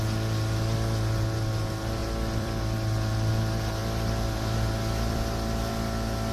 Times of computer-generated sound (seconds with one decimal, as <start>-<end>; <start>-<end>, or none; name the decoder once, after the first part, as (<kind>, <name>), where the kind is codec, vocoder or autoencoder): 2.0-3.3 (vocoder, BigVGAN v2); 3.8-5.7

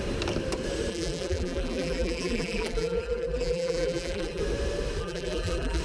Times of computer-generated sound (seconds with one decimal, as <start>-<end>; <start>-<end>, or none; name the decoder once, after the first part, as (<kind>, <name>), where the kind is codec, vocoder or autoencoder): 0.9-4.4 (vocoder, BigVGAN v2); 5.0-5.8

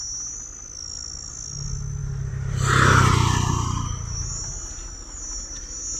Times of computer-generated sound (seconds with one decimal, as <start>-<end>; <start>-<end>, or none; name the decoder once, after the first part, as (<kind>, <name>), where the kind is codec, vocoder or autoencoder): none